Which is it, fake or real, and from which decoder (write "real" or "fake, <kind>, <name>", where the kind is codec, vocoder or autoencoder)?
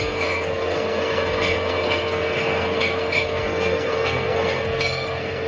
fake, codec, SNAC